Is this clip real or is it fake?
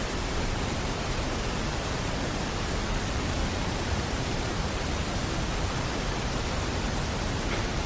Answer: fake